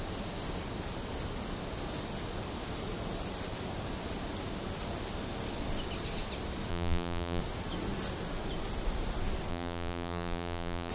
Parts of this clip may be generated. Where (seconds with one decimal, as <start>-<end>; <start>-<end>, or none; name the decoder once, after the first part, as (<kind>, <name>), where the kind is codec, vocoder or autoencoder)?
6.7-7.4 (vocoder, BigVGAN v2); 9.5-10.9